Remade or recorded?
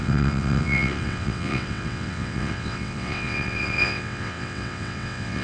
remade